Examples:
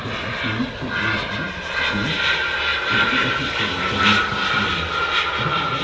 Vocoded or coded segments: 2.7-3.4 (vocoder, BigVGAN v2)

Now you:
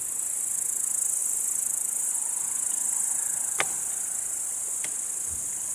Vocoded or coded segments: 1.2-4.6 (vocoder, BigVGAN v2)

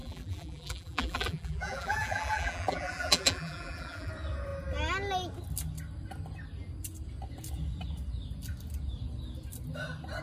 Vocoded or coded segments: 0.0-4.1 (vocoder, BigVGAN v2)

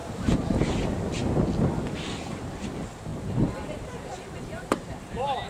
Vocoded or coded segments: 0.0-0.7 (vocoder, BigVGAN v2); 3.1-5.1

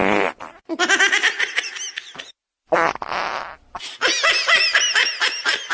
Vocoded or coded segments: none

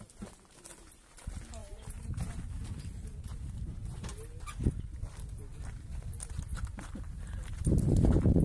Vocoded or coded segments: 1.6-4.2 (vocoder, BigVGAN v2); 6.5-8.4

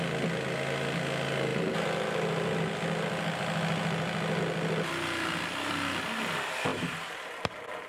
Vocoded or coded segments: 6.7-7.5 (vocoder, BigVGAN v2)